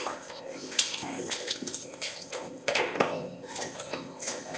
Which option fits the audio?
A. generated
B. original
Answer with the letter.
A